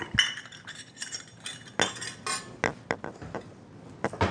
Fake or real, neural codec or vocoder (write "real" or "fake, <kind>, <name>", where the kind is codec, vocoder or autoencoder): real